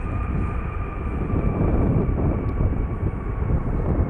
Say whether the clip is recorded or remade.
remade